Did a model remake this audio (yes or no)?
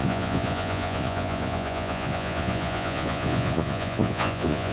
yes